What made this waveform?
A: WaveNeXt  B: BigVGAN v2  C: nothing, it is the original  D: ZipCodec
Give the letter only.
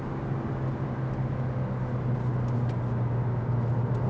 C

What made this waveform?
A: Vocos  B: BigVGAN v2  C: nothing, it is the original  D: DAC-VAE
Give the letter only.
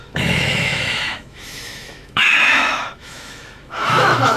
D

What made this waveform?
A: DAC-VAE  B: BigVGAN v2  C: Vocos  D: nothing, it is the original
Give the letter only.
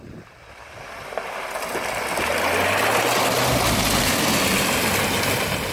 D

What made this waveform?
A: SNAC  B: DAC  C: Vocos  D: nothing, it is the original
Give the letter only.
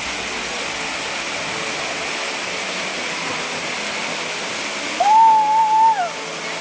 D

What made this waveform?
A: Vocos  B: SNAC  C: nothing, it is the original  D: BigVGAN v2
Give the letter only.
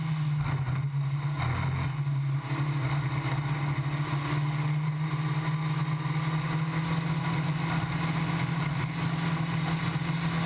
C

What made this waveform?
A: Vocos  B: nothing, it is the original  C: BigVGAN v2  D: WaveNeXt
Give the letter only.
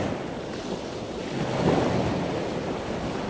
B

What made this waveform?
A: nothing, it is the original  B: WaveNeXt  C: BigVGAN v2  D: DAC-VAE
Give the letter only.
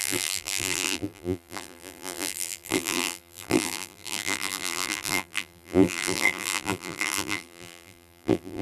C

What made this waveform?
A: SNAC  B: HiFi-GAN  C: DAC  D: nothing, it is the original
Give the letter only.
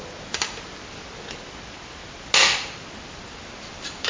D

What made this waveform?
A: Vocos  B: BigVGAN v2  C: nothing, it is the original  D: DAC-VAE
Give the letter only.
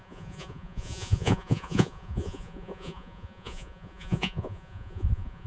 A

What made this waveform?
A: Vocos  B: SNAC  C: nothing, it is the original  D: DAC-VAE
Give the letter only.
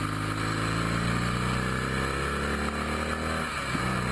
C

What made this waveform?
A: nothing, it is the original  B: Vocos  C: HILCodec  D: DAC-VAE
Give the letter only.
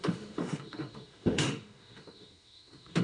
D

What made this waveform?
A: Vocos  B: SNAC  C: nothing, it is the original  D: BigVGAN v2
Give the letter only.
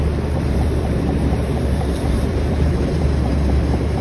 D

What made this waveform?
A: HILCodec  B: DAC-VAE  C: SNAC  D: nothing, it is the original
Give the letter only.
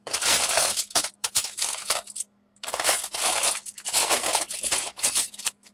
C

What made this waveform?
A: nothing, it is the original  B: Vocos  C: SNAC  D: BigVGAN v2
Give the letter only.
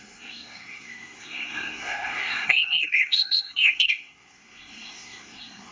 C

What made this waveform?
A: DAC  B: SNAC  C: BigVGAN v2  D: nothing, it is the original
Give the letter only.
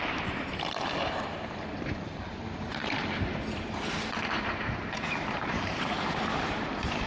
C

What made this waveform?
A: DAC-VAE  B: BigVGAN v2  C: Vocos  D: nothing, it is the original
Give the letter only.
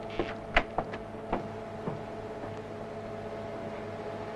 D